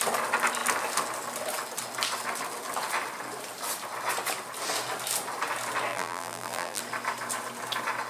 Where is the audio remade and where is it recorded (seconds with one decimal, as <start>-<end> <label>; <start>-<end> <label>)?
0.0-5.9 recorded; 5.9-6.8 remade; 6.8-8.1 recorded